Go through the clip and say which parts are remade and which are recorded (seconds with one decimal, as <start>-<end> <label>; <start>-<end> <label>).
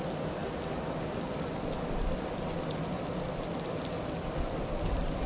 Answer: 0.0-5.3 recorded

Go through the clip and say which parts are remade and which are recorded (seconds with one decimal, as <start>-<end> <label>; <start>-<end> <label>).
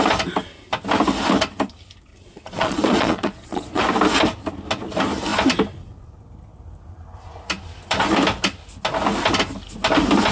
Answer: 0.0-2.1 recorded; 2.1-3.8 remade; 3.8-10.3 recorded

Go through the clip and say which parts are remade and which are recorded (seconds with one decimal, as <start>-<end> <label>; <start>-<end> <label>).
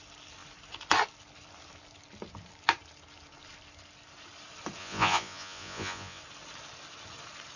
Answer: 0.0-4.8 recorded; 4.8-6.2 remade; 6.2-7.6 recorded